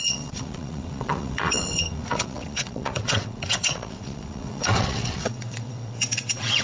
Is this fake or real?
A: fake